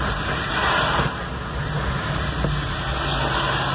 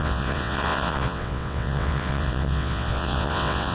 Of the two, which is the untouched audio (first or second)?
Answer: first